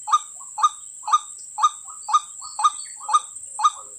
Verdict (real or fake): real